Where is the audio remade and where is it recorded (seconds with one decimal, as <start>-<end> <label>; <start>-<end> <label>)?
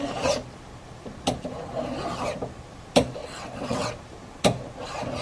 0.0-3.2 recorded; 3.2-3.9 remade; 3.9-5.2 recorded